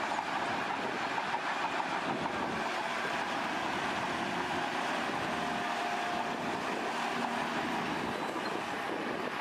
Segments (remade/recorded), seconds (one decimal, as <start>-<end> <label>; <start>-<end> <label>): 0.0-9.4 recorded